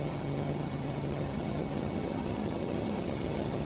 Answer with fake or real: fake